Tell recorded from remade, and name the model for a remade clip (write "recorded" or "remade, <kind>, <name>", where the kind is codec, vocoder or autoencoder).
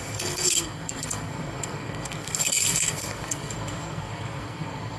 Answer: remade, codec, SNAC